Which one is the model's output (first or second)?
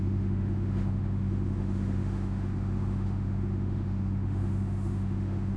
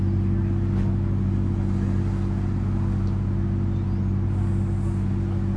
first